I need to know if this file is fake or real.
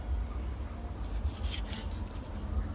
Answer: real